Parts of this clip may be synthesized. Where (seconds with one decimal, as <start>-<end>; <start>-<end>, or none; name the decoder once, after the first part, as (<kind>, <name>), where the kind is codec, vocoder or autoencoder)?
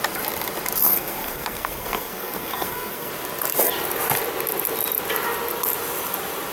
0.8-3.1 (codec, SNAC)